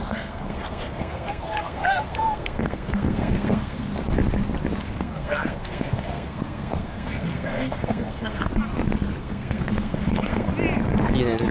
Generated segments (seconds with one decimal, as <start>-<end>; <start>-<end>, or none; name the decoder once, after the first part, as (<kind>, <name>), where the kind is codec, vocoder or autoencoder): 0.0-3.9 (codec, SNAC); 4.8-8.5; 9.2-10.5